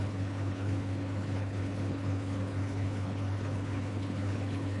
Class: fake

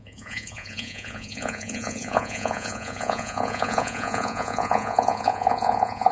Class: fake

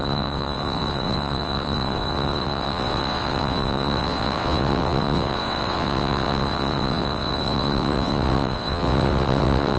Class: fake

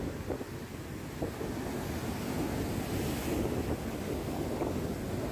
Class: real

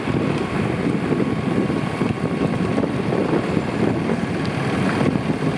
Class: real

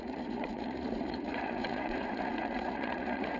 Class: fake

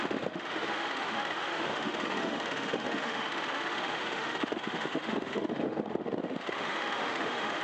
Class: fake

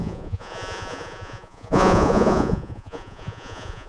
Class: fake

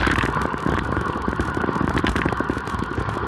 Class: fake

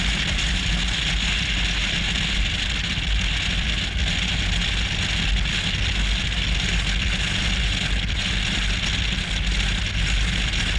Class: real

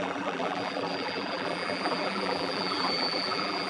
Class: fake